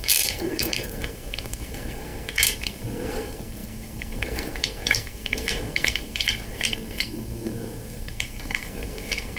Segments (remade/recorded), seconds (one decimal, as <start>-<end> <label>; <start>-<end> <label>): 0.0-9.4 remade